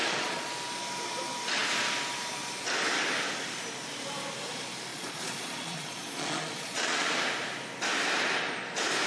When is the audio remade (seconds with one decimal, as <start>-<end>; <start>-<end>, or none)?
0.0-0.5; 4.9-7.1